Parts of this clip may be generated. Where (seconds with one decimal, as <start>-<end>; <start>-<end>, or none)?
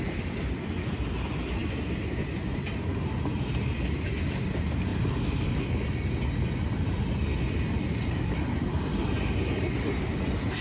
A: 4.9-5.5; 7.3-8.1